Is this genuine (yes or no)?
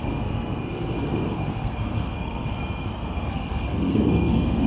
no